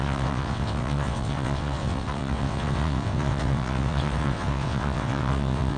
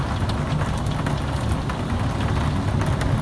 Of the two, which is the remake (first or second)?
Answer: first